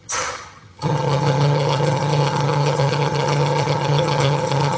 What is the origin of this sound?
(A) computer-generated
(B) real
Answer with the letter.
A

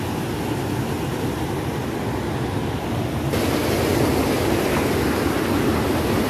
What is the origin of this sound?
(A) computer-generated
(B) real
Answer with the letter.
B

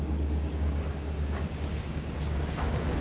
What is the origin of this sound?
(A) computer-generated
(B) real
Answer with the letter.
A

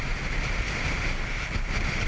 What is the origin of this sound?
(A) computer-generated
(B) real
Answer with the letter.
B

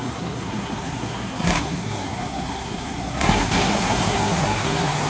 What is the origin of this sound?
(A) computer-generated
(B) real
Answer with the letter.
A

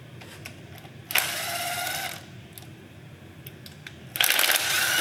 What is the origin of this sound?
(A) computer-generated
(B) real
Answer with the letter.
B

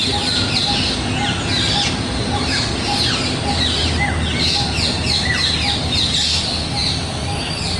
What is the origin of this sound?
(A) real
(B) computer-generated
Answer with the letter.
A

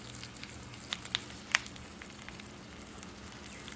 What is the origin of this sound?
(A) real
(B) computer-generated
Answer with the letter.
A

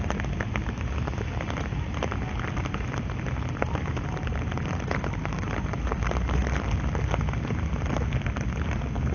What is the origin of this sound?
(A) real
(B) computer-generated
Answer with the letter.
A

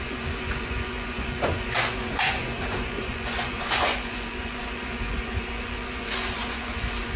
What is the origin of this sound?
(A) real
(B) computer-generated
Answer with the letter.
B